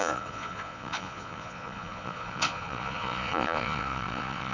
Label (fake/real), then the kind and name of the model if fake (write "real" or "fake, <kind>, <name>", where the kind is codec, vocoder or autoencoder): fake, vocoder, Vocos